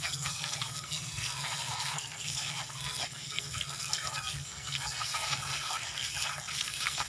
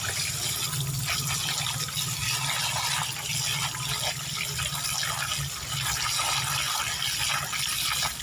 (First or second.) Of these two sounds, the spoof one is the first